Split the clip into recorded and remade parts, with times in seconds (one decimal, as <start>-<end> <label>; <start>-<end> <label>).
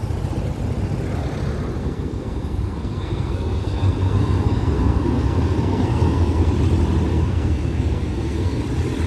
0.0-1.8 recorded; 1.8-6.5 remade; 6.5-7.1 recorded; 7.1-8.6 remade; 8.6-9.1 recorded